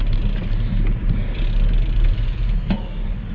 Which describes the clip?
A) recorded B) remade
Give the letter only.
A